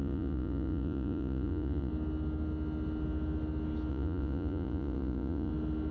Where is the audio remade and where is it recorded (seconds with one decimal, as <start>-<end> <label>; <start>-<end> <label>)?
0.0-1.9 remade; 1.9-3.9 recorded; 3.9-5.5 remade; 5.5-5.9 recorded